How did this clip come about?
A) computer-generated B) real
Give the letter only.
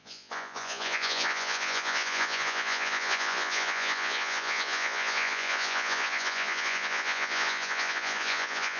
A